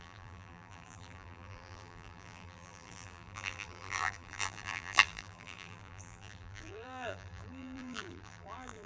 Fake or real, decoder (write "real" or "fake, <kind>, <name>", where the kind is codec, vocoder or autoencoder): fake, vocoder, BigVGAN v2